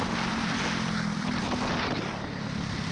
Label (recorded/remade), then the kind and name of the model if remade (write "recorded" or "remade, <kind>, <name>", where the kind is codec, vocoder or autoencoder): recorded